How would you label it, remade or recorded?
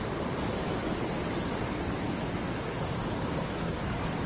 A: recorded